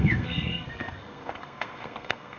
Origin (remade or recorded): remade